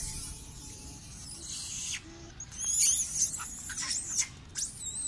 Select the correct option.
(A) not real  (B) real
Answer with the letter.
B